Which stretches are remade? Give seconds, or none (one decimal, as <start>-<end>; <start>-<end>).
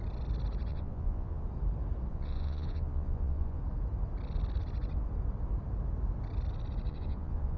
0.7-1.4; 2.1-3.6; 6.9-7.6